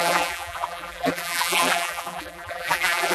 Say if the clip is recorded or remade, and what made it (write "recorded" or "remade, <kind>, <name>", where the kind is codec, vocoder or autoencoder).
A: remade, vocoder, BigVGAN v2